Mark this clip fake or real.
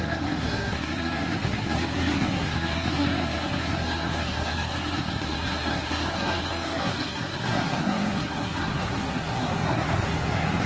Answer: fake